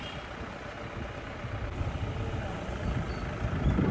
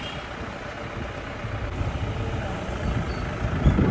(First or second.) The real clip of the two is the second